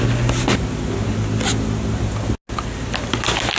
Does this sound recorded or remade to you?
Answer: recorded